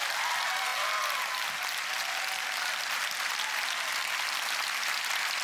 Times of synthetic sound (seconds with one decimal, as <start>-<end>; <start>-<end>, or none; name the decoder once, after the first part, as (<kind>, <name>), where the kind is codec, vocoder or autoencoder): none